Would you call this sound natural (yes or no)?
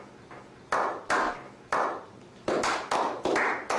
yes